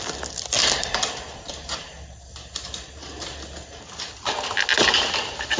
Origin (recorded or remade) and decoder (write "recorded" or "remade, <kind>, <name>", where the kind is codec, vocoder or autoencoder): recorded